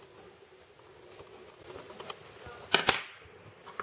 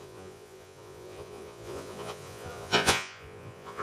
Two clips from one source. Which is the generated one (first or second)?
second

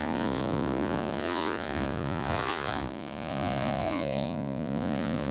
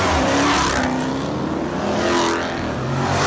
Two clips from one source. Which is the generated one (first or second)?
first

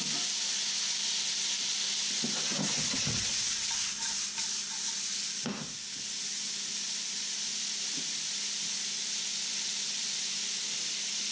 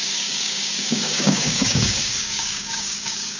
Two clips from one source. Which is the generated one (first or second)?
second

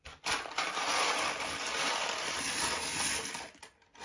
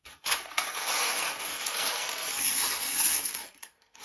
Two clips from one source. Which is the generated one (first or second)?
second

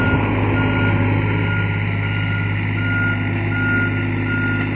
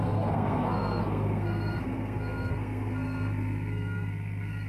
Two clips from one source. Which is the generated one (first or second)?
second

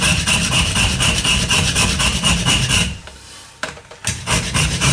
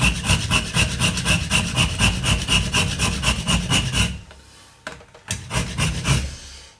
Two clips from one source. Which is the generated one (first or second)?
first